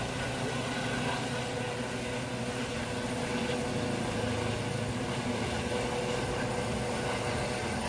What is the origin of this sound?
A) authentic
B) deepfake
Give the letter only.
A